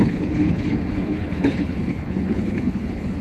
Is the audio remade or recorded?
remade